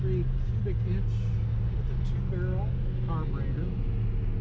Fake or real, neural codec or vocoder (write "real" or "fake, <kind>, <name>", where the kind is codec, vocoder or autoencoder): real